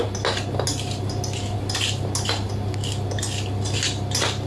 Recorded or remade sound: recorded